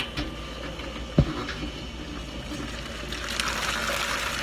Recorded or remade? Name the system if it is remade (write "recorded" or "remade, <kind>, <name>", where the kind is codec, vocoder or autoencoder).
recorded